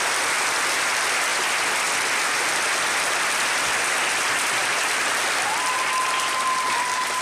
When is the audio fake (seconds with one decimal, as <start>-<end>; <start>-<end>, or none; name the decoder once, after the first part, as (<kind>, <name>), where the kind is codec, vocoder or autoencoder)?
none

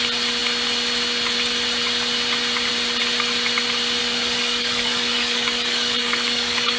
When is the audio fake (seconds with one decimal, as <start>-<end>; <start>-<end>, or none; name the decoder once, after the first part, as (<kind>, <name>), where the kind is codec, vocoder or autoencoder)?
4.0-6.8 (codec, DAC)

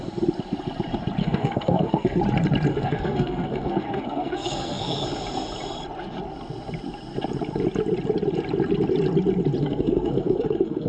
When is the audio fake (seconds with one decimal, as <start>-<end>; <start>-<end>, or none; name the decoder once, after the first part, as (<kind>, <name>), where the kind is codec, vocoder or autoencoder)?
1.2-2.2 (codec, SNAC); 2.7-5.0; 9.6-10.9